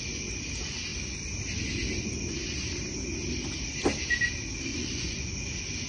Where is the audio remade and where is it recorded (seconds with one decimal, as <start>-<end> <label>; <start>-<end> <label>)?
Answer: 0.0-4.7 recorded; 4.7-5.3 remade; 5.3-5.9 recorded